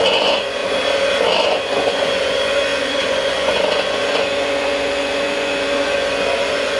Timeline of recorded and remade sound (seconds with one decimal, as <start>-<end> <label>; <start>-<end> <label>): 0.0-0.6 remade; 0.6-1.4 recorded; 1.4-6.8 remade